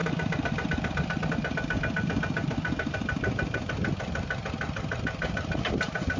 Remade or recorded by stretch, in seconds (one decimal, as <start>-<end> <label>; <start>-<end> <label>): 0.0-6.2 recorded